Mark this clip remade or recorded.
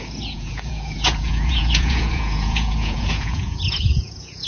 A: remade